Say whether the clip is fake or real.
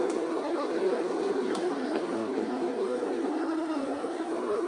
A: fake